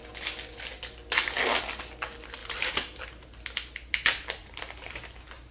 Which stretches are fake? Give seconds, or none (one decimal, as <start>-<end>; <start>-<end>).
2.4-3.0; 4.4-4.9